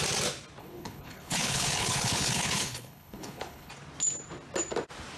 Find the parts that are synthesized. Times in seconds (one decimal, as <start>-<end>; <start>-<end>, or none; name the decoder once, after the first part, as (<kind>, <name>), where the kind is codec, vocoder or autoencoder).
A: 0.6-3.7 (codec, HILCodec)